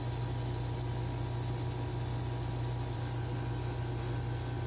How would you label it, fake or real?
real